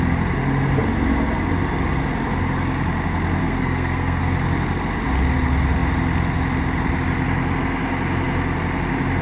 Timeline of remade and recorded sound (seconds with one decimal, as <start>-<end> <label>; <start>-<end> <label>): 0.0-3.4 recorded; 3.4-4.2 remade; 4.2-9.2 recorded